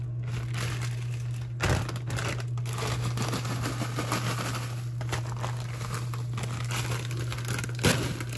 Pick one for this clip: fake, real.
real